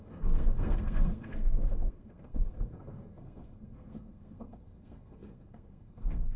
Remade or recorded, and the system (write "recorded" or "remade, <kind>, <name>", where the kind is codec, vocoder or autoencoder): remade, codec, SNAC